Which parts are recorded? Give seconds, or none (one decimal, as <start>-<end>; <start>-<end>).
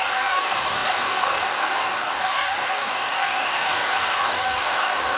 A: none